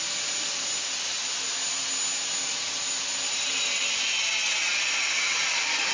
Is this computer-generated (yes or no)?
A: no